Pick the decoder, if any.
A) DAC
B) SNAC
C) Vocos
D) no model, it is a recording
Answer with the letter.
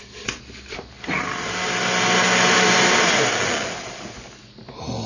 D